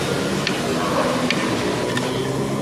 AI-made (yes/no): no